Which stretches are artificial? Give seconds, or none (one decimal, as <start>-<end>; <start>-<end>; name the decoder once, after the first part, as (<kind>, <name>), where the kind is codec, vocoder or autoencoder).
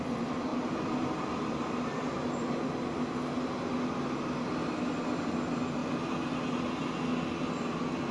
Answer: 0.5-2.1 (vocoder, BigVGAN v2)